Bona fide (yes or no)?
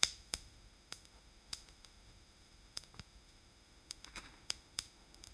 no